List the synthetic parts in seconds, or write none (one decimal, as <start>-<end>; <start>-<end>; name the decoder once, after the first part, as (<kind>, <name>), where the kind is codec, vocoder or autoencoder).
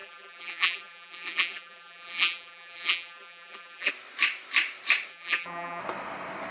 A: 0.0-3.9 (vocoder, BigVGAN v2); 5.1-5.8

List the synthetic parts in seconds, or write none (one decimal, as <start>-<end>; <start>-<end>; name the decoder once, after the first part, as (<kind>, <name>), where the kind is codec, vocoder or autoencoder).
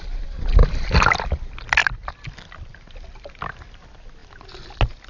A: 0.6-1.2 (vocoder, BigVGAN v2); 1.8-2.9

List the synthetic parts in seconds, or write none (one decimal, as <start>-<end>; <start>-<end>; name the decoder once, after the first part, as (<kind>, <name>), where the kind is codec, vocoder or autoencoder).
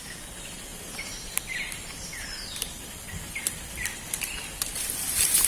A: 0.7-3.7 (vocoder, BigVGAN v2)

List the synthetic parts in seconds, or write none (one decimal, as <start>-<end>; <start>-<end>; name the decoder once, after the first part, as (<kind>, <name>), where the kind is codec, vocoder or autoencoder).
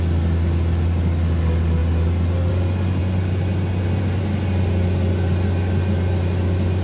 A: none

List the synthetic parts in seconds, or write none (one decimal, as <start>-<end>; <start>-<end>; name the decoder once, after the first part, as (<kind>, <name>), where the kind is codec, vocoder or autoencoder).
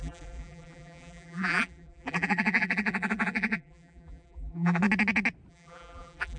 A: 0.0-4.8 (vocoder, BigVGAN v2); 5.5-6.4